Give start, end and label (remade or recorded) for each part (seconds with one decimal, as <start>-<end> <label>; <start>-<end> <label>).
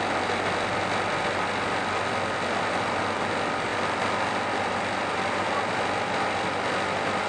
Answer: 0.0-7.3 recorded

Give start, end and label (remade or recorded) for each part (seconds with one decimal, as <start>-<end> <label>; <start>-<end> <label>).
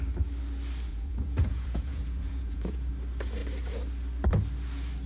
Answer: 0.0-0.9 recorded; 0.9-2.9 remade; 2.9-5.1 recorded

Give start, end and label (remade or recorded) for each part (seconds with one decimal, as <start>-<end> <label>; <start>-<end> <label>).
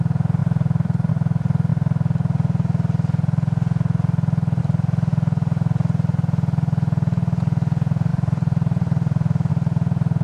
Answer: 0.0-0.4 recorded; 0.4-1.1 remade; 1.1-8.1 recorded; 8.1-9.5 remade; 9.5-10.2 recorded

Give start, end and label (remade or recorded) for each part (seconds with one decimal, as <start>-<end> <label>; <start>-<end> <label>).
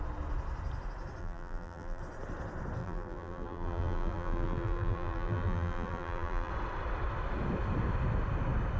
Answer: 0.0-1.2 recorded; 1.2-2.0 remade; 2.0-2.8 recorded; 2.8-6.5 remade; 6.5-8.8 recorded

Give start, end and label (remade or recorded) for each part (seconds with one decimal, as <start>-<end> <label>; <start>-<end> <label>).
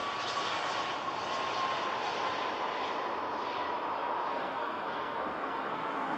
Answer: 0.0-4.3 recorded; 4.3-6.2 remade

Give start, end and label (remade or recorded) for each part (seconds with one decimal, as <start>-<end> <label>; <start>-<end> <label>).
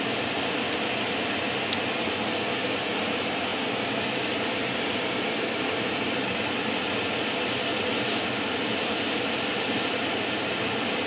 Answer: 0.0-11.1 recorded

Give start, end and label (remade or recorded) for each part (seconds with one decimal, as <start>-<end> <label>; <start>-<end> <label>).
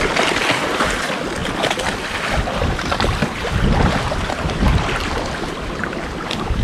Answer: 0.0-6.6 recorded